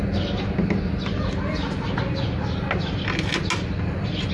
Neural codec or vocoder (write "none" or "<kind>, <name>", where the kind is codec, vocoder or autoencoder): none